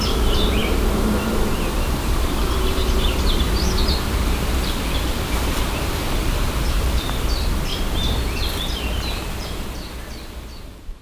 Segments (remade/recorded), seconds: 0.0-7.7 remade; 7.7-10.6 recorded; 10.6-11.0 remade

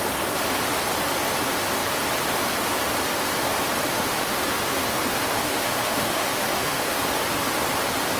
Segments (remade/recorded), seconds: 0.0-3.9 recorded; 3.9-5.0 remade; 5.0-5.4 recorded; 5.4-7.0 remade; 7.0-8.2 recorded